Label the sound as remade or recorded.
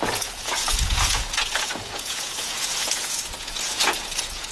remade